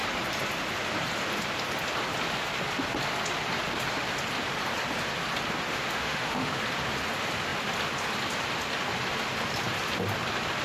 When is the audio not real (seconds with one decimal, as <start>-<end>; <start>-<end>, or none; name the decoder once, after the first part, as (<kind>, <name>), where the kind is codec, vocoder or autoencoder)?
5.7-6.6 (autoencoder, DAC-VAE)